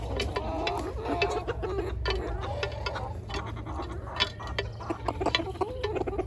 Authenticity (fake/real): real